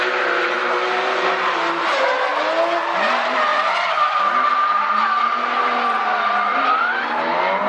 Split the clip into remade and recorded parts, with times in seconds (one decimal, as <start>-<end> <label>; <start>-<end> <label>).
0.0-7.7 recorded